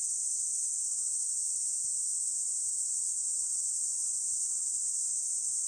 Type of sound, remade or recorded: recorded